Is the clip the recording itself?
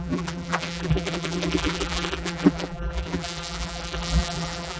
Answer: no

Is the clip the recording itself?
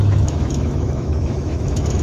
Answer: no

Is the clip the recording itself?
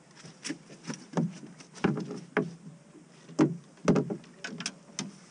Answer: yes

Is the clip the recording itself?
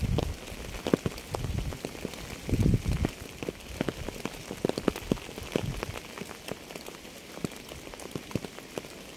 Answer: yes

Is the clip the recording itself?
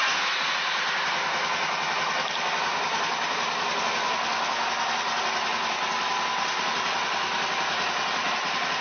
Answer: yes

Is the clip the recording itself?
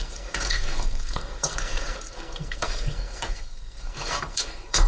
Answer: no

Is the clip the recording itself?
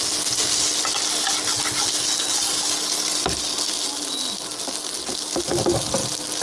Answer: yes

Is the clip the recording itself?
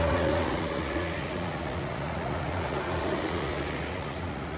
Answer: no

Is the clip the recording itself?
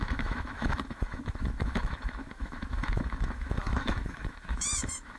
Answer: no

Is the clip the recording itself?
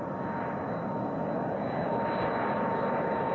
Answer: yes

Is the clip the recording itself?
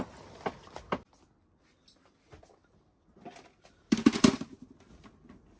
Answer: yes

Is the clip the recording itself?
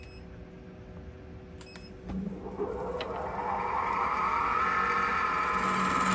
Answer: yes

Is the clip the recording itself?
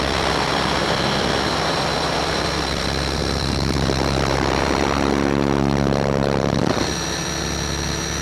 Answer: no